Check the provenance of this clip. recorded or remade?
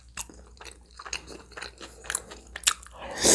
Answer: recorded